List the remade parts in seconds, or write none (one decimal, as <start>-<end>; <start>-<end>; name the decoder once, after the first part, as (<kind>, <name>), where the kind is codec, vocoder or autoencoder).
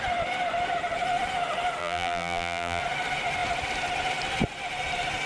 1.8-2.8 (vocoder, BigVGAN v2)